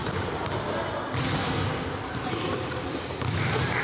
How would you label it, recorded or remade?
recorded